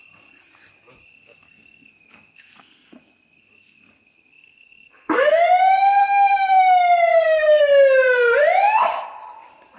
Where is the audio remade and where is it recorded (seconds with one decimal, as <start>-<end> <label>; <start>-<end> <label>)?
0.0-1.1 recorded; 1.1-5.4 remade; 5.4-6.0 recorded; 6.0-6.6 remade; 6.6-7.1 recorded; 7.1-7.6 remade; 7.6-9.8 recorded